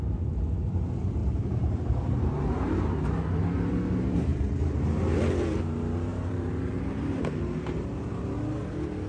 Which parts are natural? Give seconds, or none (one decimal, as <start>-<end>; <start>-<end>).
0.0-1.2; 2.8-4.3; 5.0-6.1; 7.4-9.1